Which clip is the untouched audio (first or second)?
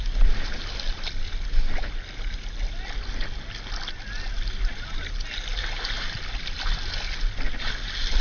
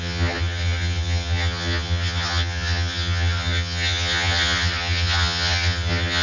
first